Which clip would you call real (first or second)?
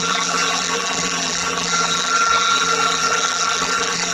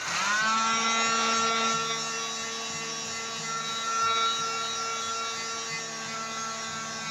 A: second